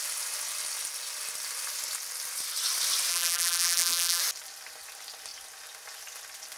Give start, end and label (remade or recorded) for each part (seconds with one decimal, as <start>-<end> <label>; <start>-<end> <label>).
0.0-3.1 recorded; 3.1-4.2 remade; 4.2-6.6 recorded